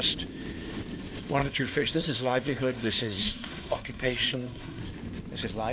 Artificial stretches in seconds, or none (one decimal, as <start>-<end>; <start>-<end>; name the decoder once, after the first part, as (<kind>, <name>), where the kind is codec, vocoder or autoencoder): 1.4-4.8 (codec, SNAC)